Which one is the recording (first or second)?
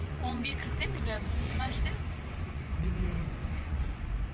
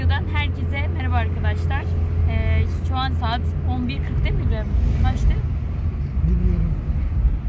second